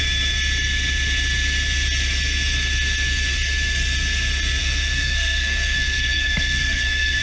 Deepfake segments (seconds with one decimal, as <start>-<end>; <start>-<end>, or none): 4.6-7.2